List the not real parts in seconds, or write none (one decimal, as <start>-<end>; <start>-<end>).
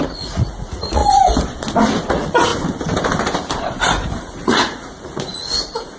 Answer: 0.0-1.0; 2.1-2.5; 4.2-6.0